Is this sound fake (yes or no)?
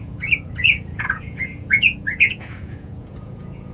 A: yes